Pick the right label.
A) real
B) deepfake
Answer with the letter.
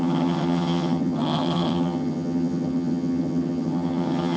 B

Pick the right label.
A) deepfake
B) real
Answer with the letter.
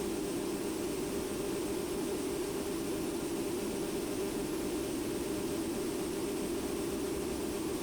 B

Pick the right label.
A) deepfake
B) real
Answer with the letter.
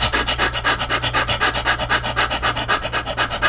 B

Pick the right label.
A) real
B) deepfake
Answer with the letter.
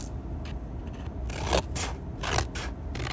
A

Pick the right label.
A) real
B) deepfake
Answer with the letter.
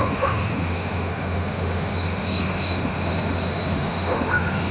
B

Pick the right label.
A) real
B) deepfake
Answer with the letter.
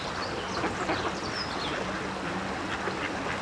A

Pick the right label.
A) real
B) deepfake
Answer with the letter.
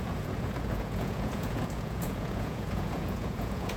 B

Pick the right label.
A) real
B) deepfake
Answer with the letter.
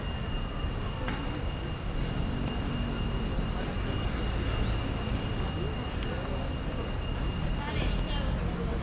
A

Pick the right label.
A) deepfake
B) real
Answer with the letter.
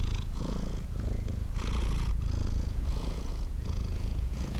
A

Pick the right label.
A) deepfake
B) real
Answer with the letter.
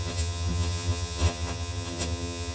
A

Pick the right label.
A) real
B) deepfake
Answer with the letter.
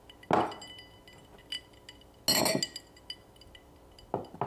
A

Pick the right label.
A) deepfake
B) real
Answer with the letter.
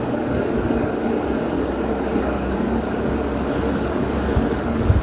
A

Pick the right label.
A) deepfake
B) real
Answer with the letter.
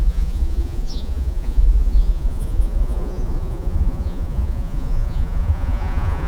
A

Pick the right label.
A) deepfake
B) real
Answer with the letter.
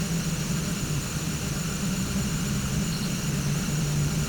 B